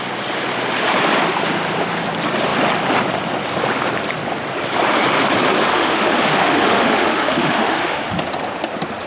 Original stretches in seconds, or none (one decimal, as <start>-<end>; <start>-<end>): 0.0-5.7; 8.1-9.1